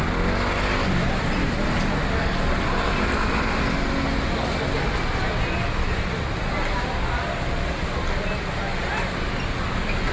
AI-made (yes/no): no